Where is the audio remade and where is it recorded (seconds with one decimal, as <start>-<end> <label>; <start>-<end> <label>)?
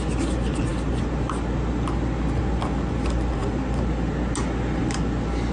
0.0-5.5 recorded